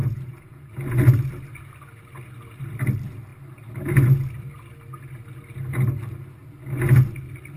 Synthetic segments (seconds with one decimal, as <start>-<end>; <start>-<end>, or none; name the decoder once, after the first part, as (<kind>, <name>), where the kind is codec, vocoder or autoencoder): 0.0-0.7 (vocoder, Vocos)